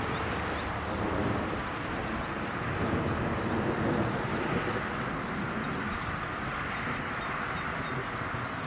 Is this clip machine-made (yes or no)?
no